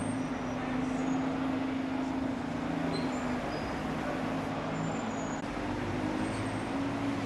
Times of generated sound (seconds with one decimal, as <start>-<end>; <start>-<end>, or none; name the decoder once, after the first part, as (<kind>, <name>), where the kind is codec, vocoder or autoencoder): none